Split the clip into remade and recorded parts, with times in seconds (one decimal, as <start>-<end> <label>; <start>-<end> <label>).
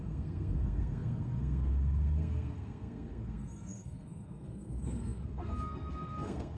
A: 0.0-6.6 remade